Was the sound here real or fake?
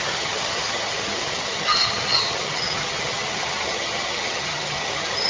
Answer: fake